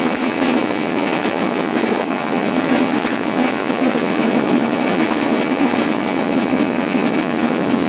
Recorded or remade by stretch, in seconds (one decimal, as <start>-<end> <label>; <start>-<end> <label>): 0.0-7.9 remade